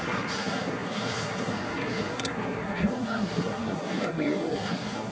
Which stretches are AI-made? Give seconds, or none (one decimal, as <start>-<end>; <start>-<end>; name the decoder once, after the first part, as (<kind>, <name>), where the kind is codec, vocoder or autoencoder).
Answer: 0.0-5.1 (codec, SNAC)